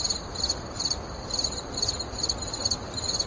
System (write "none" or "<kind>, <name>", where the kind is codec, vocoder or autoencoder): vocoder, BigVGAN v2